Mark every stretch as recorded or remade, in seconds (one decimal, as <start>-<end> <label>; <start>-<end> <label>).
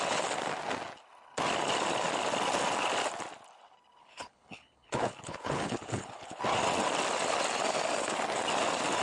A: 0.0-4.0 recorded; 4.0-6.4 remade; 6.4-9.0 recorded